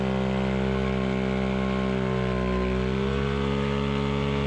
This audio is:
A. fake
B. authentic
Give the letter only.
B